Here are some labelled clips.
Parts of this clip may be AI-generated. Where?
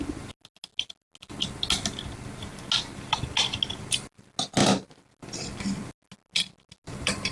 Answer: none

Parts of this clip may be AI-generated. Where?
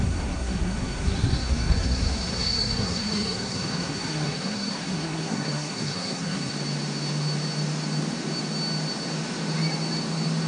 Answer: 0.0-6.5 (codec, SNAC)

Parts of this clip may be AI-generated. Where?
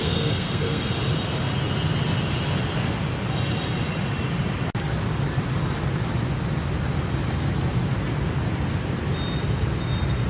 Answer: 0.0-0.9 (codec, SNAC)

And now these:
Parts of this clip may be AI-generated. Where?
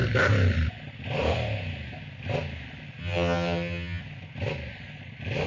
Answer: 3.0-4.0 (vocoder, HiFi-GAN)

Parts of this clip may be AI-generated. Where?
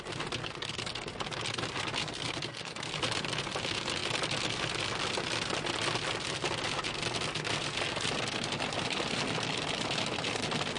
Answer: 0.4-1.1 (codec, SNAC); 2.0-2.9